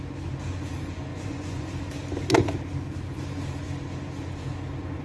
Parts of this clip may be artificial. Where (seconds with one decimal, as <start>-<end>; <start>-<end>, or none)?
1.1-1.7